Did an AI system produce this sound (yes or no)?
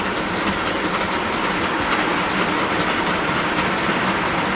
no